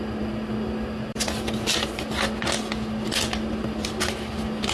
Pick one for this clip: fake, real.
real